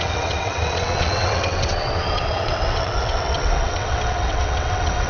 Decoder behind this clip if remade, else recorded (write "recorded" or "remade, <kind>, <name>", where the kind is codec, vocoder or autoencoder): remade, vocoder, WaveNeXt